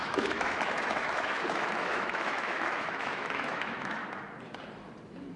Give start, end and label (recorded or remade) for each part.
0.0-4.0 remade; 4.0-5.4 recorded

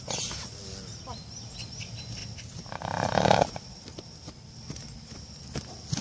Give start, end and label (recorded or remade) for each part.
0.0-6.0 recorded

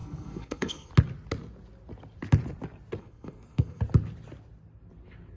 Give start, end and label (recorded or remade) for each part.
0.0-0.9 remade; 0.9-3.0 recorded; 3.0-3.8 remade; 3.8-5.4 recorded